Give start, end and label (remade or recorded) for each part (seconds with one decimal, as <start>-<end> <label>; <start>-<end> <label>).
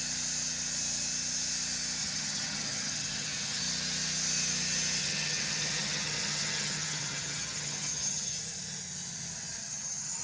0.0-2.0 recorded; 2.0-3.6 remade; 3.6-5.0 recorded; 5.0-8.4 remade; 8.4-9.6 recorded; 9.6-10.2 remade